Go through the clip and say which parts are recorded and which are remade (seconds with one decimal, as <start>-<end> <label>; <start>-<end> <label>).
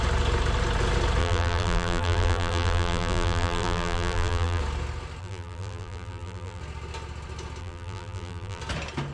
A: 0.0-1.2 recorded; 1.2-4.6 remade; 4.6-5.2 recorded; 5.2-6.6 remade; 6.6-7.6 recorded; 7.6-8.6 remade; 8.6-9.1 recorded